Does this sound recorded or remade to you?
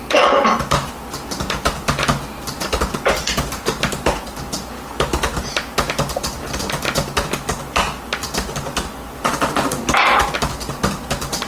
recorded